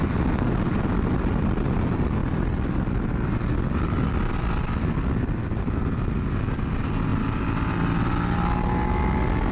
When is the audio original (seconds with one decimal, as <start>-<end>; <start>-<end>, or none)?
0.0-2.2; 2.8-7.1; 8.1-9.5